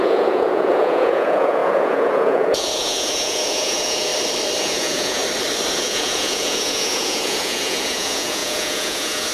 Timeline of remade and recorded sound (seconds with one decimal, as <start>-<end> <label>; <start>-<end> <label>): 0.0-4.1 remade; 4.1-4.6 recorded; 4.6-5.2 remade; 5.2-5.7 recorded; 5.7-9.3 remade